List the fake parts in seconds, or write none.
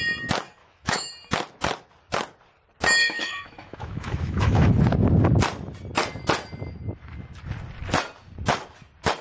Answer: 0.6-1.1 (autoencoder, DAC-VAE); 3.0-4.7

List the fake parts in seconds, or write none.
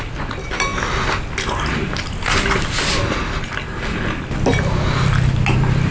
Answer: none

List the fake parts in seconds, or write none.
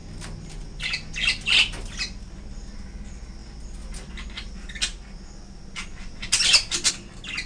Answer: none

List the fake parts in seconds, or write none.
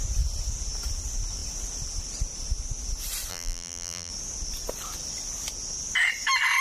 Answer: 3.3-4.1 (vocoder, BigVGAN v2)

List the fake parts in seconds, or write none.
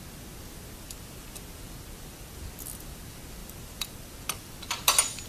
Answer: 3.4-4.1 (vocoder, BigVGAN v2)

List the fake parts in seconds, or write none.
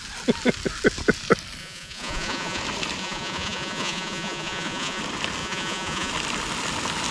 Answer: 1.6-2.6 (vocoder, Vocos); 3.0-5.0; 5.4-6.1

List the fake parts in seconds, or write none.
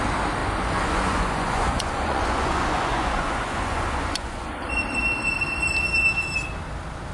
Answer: 0.4-4.7 (vocoder, Vocos)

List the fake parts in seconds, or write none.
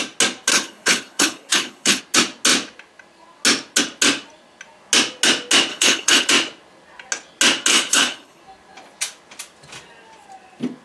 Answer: 0.5-2.0 (codec, HILCodec); 5.7-6.3; 7.7-8.4